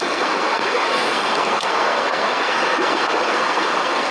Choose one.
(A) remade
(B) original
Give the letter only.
A